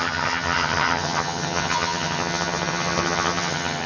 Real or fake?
fake